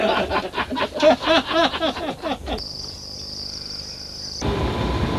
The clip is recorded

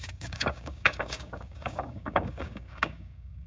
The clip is remade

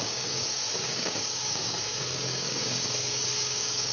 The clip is remade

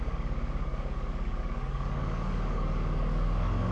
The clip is remade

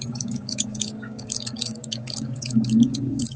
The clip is remade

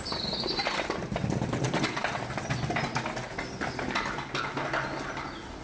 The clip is recorded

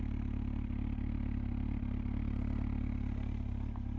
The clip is recorded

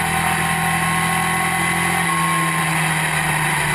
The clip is recorded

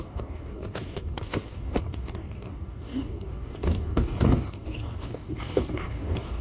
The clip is remade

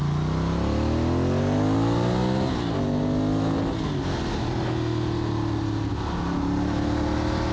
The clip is recorded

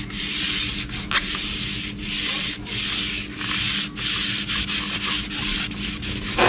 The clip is recorded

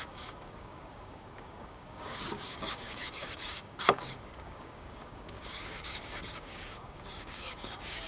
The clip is remade